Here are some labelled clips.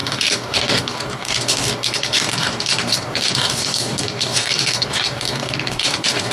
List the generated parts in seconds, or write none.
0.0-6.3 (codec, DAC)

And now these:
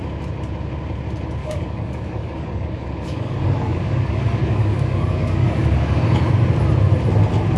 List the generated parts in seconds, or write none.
1.4-6.0 (codec, DAC)

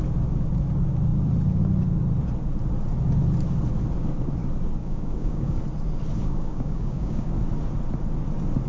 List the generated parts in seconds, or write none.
4.8-5.6 (codec, DAC); 6.2-7.3

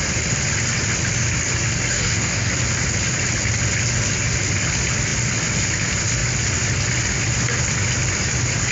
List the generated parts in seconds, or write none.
1.9-2.5 (codec, DAC)

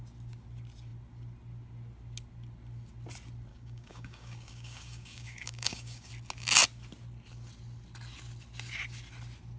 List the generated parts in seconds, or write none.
3.5-6.1 (codec, DAC)

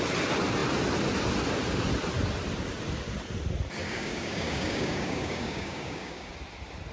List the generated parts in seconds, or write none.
3.8-6.3 (codec, DAC)